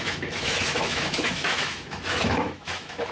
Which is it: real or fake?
fake